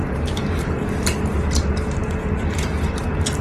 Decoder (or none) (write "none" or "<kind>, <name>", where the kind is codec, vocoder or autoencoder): vocoder, BigVGAN v2